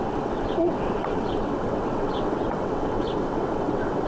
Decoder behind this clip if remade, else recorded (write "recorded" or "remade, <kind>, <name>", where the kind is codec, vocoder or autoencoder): remade, vocoder, WaveNeXt